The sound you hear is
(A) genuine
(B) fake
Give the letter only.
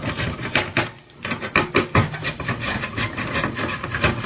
A